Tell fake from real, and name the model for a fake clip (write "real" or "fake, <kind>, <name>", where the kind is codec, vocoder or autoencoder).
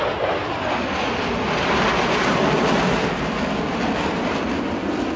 real